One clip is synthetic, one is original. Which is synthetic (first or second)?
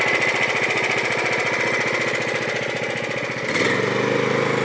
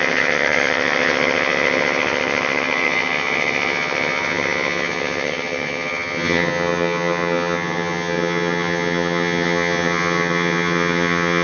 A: second